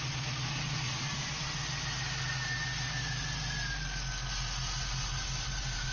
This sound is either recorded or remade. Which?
recorded